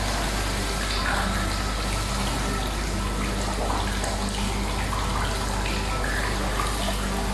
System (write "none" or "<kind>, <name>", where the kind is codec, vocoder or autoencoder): none